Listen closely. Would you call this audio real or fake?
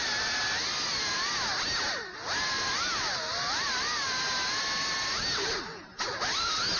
real